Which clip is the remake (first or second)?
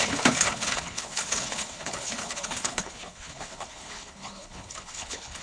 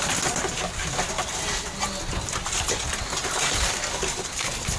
first